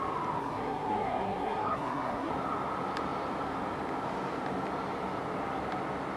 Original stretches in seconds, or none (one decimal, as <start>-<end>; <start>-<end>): 0.0-0.4; 2.3-6.2